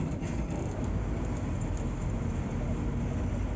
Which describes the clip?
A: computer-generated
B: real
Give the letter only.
B